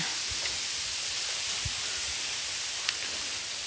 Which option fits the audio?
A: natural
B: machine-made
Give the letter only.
A